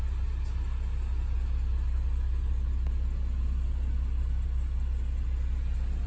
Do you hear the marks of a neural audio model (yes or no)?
no